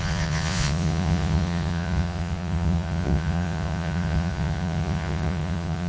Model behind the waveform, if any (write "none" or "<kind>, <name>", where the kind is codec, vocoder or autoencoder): vocoder, Vocos